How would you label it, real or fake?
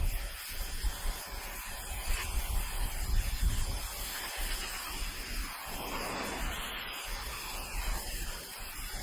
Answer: real